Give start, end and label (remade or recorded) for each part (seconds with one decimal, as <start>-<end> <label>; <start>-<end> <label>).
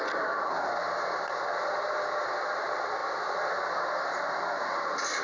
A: 0.0-5.2 recorded